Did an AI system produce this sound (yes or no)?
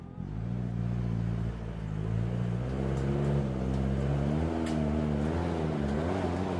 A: no